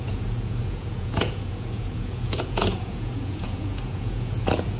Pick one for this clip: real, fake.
fake